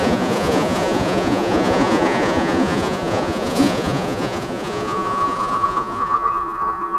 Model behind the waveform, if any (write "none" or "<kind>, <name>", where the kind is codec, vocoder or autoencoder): vocoder, Vocos